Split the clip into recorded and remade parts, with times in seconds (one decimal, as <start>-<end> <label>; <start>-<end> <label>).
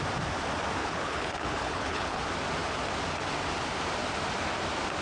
0.0-0.8 recorded; 0.8-2.2 remade; 2.2-5.0 recorded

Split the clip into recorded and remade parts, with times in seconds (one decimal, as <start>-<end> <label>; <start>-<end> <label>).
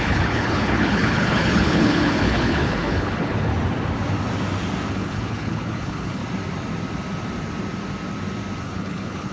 0.0-3.5 remade; 3.5-4.9 recorded; 4.9-6.2 remade; 6.2-8.6 recorded; 8.6-9.3 remade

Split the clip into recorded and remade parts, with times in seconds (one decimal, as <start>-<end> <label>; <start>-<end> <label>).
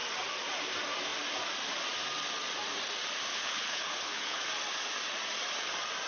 0.0-3.3 recorded; 3.3-4.4 remade; 4.4-6.1 recorded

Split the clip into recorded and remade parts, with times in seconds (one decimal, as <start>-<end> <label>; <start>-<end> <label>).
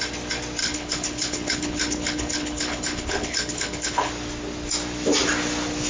0.0-0.6 recorded; 0.6-4.1 remade; 4.1-5.9 recorded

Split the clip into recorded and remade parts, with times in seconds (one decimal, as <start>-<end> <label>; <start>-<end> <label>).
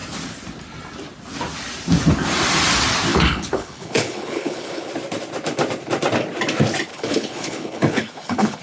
0.0-3.1 recorded; 3.1-4.9 remade; 4.9-6.9 recorded; 6.9-8.6 remade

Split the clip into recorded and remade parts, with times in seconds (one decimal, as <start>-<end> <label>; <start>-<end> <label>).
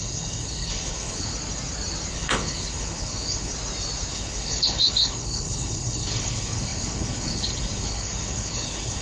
0.0-1.3 remade; 1.3-2.1 recorded; 2.1-3.5 remade; 3.5-4.1 recorded; 4.1-9.0 remade